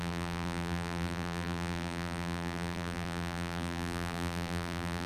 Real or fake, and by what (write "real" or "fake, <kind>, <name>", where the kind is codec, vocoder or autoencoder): fake, vocoder, BigVGAN v2